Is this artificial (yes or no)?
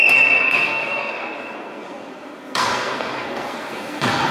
yes